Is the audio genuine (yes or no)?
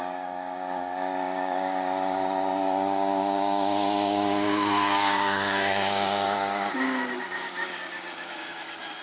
no